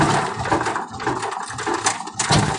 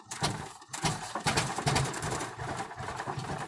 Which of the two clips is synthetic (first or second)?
second